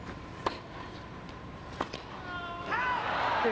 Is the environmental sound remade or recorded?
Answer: recorded